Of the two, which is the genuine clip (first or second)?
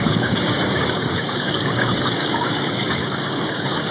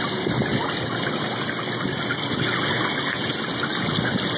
second